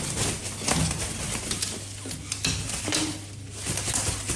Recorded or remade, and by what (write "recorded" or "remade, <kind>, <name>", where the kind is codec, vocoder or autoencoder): recorded